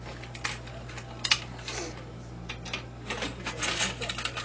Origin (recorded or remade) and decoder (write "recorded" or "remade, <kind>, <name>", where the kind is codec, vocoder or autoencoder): recorded